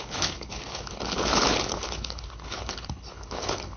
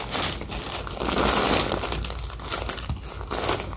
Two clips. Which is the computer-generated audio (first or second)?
first